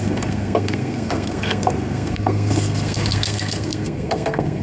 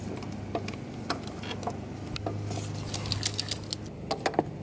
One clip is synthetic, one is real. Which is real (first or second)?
second